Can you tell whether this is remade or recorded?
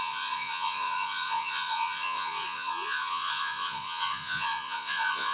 remade